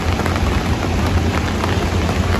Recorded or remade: recorded